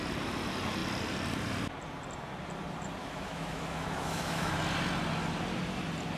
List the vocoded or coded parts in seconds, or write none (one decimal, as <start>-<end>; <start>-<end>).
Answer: 3.0-4.6